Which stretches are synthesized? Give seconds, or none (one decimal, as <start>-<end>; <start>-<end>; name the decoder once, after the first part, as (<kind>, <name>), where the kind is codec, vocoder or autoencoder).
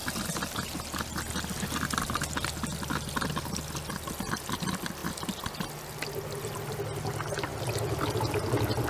none